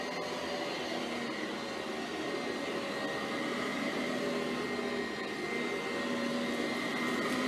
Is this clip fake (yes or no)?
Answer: no